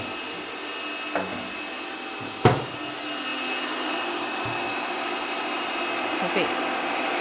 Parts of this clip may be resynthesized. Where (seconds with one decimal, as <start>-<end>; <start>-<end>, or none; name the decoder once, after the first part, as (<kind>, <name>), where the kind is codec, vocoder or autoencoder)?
none